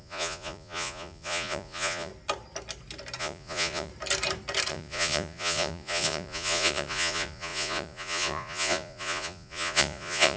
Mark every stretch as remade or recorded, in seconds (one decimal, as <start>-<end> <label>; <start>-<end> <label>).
0.0-2.1 remade; 2.1-3.2 recorded; 3.2-3.9 remade; 3.9-4.7 recorded; 4.7-10.4 remade